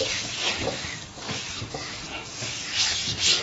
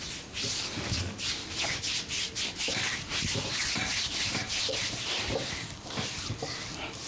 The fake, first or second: first